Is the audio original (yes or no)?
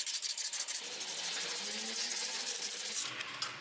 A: yes